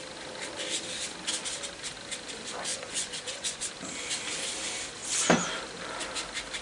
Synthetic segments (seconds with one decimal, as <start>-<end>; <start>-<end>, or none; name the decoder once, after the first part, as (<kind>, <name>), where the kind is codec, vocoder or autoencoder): 2.7-3.7 (vocoder, Vocos)

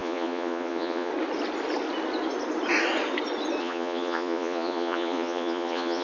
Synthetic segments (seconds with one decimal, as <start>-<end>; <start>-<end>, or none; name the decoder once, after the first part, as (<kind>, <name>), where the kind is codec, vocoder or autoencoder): 0.0-1.1 (vocoder, Vocos); 3.6-6.0